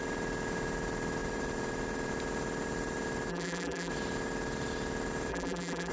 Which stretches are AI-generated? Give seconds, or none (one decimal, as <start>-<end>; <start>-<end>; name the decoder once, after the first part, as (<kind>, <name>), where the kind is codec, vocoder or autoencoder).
3.3-3.9 (vocoder, BigVGAN v2); 5.3-5.9